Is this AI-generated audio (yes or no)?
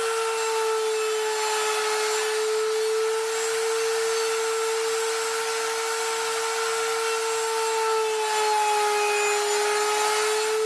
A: no